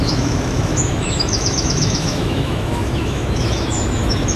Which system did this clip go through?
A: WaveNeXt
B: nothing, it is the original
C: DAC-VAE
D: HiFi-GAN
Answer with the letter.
C